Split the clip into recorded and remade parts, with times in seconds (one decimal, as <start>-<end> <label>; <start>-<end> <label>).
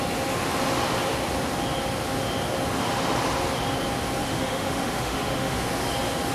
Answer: 0.0-4.2 recorded; 4.2-5.7 remade; 5.7-6.3 recorded